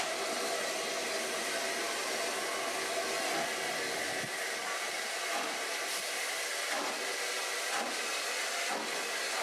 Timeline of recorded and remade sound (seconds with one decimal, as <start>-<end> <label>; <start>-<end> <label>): 0.0-1.0 recorded; 1.0-2.2 remade; 2.2-4.6 recorded; 4.6-6.5 remade; 6.5-9.4 recorded